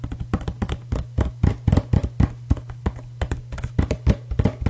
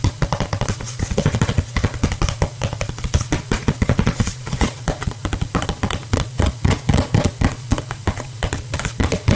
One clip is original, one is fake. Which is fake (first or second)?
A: second